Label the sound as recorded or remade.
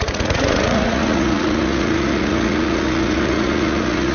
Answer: remade